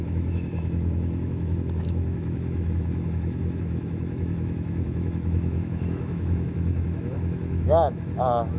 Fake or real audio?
fake